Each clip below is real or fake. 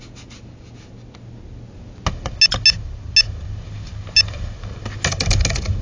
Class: real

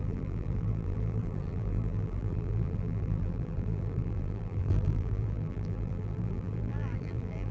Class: fake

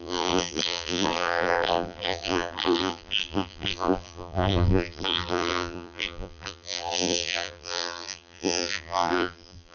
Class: fake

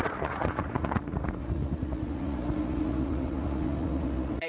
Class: fake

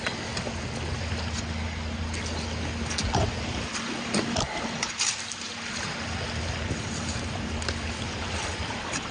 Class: real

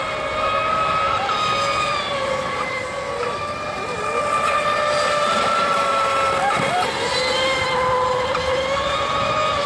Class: real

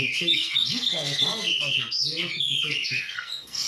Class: fake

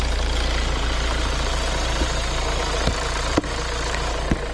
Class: fake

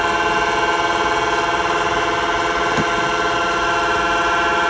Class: real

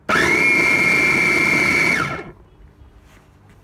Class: real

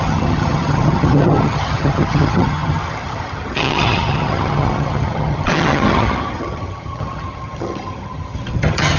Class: fake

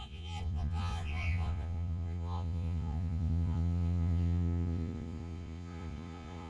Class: fake